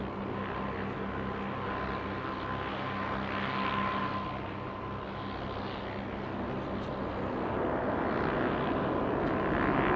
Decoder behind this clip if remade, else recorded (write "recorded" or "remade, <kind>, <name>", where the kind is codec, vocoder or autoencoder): recorded